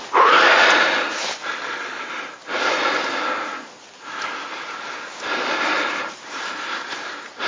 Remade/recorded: recorded